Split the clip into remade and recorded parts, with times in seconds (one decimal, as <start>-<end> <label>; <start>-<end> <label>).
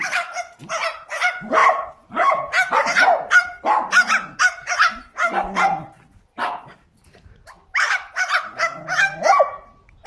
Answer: 0.0-10.1 recorded